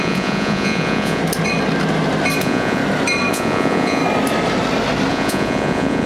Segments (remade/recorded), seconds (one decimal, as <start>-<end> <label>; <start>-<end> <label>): 0.0-1.2 remade; 1.2-2.4 recorded; 2.4-2.8 remade; 2.8-3.3 recorded; 3.3-4.0 remade; 4.0-5.1 recorded; 5.1-6.1 remade